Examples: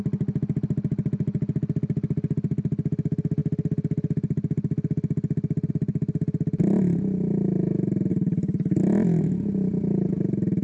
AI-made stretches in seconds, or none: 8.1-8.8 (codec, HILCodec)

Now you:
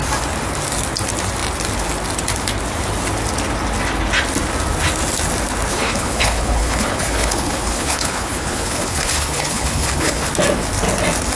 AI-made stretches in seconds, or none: 5.7-10.3 (codec, HILCodec)

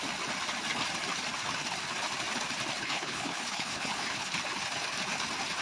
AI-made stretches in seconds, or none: 2.8-4.3 (codec, HILCodec)

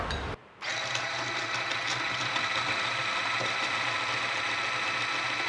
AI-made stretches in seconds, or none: none

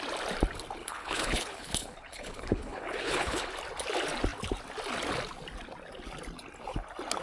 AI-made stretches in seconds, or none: 0.8-3.5 (codec, HILCodec)

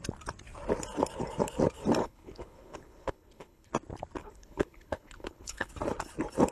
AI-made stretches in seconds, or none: 2.0-3.7 (codec, HILCodec); 4.2-5.7